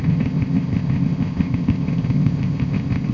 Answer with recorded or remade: remade